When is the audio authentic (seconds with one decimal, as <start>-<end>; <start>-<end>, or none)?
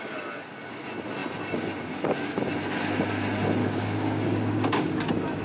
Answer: 0.0-3.6; 5.0-5.4